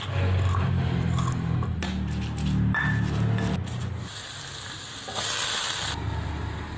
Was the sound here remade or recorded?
recorded